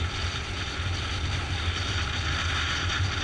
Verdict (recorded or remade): recorded